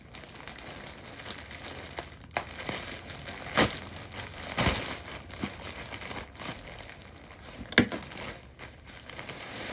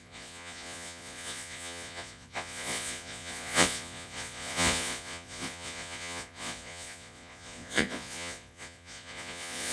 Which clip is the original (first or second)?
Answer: first